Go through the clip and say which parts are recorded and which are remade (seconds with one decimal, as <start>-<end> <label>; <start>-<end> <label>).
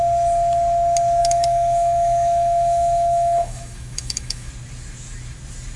0.0-1.2 recorded; 1.2-4.5 remade; 4.5-5.8 recorded